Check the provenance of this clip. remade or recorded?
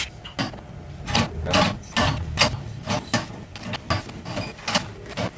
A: recorded